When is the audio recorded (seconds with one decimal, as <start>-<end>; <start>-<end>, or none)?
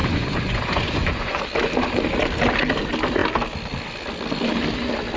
1.4-5.2